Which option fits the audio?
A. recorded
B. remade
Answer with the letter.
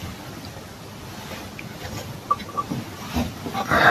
A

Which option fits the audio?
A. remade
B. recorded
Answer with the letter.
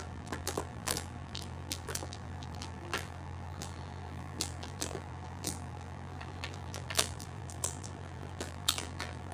A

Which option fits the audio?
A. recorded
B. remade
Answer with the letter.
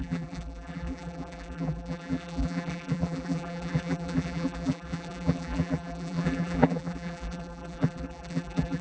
B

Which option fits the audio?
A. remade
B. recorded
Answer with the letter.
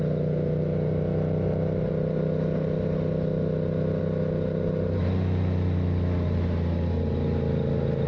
B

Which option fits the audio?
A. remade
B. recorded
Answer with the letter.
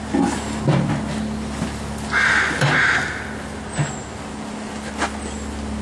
B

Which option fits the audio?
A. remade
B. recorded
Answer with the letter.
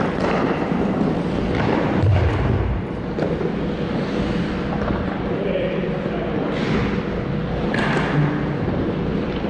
B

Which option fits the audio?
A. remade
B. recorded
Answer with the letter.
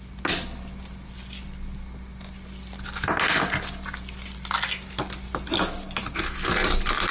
B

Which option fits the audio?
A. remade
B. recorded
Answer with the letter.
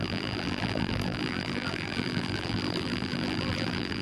A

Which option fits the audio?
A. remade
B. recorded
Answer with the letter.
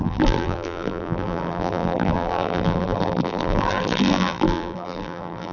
A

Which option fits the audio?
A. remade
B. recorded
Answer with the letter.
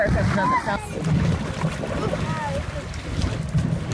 B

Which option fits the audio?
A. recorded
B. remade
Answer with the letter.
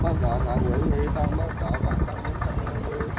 B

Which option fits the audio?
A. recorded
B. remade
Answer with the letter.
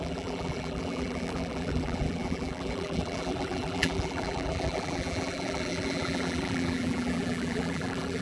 B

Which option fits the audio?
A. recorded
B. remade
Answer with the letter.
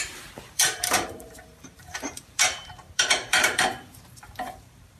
B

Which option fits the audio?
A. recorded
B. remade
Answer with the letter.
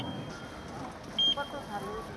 A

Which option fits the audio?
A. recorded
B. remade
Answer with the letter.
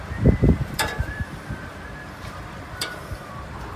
B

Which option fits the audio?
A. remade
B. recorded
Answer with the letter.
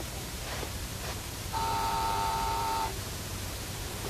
A